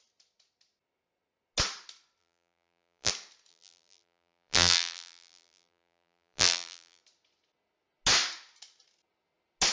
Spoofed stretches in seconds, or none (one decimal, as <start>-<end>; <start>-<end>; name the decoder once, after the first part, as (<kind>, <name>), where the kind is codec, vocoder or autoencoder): 2.2-3.1 (vocoder, BigVGAN v2); 3.5-7.0